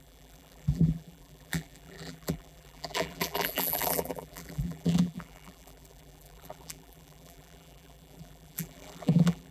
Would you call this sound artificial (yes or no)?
yes